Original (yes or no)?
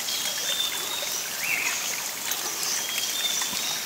yes